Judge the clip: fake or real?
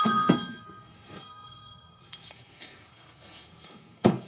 fake